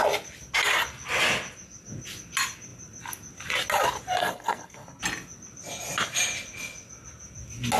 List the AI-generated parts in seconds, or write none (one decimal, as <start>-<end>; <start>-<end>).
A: 4.2-5.0